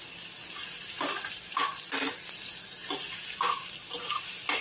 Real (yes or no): yes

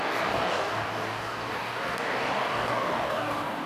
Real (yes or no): no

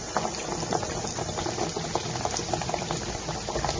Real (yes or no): yes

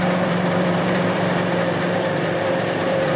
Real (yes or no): no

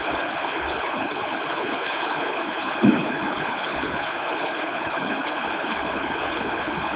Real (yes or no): no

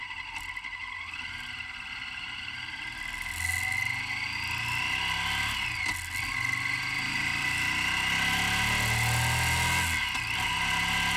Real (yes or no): yes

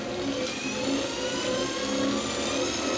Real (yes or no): yes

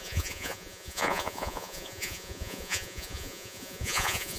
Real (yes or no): no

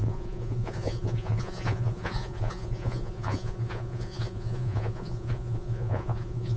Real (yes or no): no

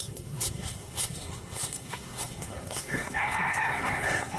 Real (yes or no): no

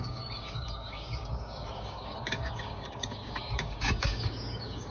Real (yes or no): no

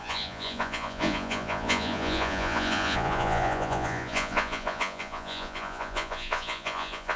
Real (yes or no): no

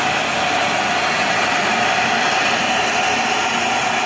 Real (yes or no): yes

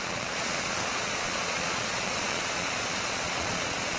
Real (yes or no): no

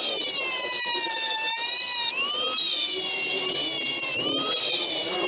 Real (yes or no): no